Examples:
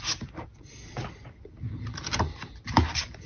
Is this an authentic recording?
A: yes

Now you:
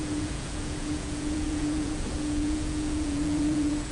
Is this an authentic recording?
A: no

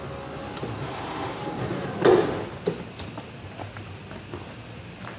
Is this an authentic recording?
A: yes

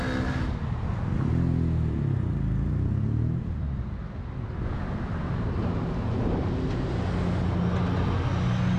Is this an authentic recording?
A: yes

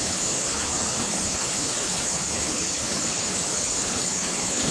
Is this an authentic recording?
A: no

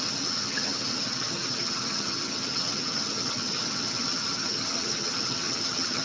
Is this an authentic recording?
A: no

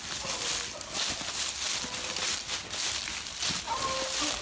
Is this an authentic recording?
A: yes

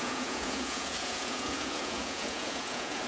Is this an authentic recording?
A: no